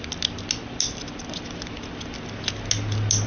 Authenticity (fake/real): real